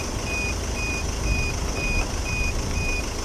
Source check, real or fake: real